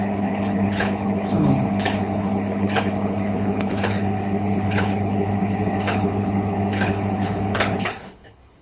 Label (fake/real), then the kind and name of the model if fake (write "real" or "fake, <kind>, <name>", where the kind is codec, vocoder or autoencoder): fake, codec, HILCodec